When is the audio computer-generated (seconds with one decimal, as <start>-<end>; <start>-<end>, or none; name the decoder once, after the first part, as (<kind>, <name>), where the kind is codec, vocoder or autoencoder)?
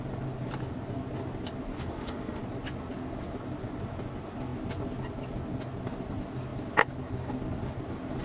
1.7-2.4 (autoencoder, DAC-VAE)